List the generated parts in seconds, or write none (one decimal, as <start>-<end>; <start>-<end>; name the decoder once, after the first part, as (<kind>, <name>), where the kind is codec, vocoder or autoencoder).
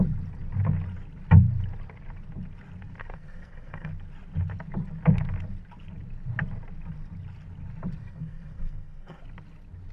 3.0-3.9 (codec, SNAC); 8.0-9.2